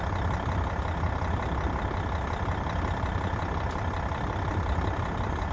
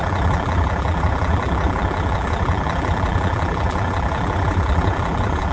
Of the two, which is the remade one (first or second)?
second